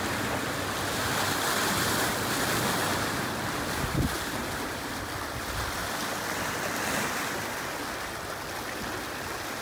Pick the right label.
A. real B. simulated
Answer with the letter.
A